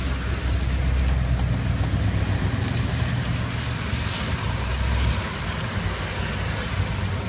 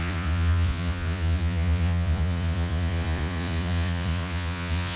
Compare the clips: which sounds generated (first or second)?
second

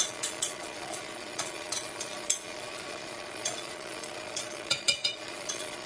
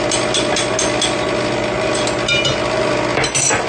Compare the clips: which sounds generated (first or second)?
first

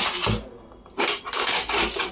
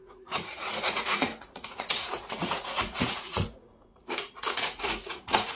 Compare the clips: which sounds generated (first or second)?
second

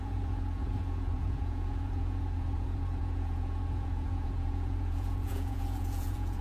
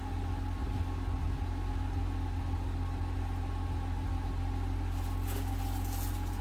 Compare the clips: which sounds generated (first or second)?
first